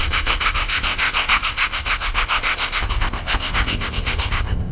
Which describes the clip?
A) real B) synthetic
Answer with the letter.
B